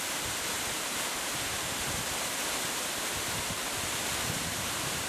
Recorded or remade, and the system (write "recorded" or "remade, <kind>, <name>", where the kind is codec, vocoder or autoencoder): remade, vocoder, BigVGAN v2